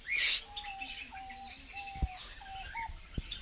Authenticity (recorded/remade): recorded